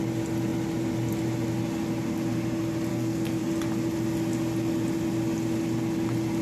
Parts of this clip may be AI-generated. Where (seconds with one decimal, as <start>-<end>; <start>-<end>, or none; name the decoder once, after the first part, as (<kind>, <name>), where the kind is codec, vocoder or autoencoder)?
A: 2.9-3.4 (codec, SNAC)